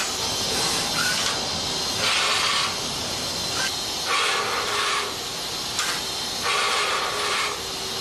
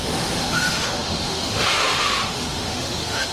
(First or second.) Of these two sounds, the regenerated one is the second